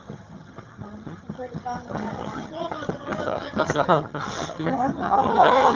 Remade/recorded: remade